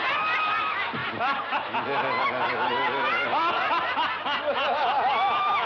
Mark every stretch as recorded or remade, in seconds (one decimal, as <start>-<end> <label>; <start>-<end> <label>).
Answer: 0.0-5.7 recorded